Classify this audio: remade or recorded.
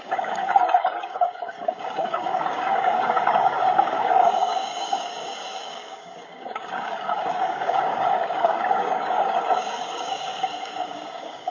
remade